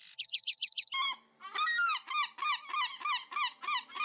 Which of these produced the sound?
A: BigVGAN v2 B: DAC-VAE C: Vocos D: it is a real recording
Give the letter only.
D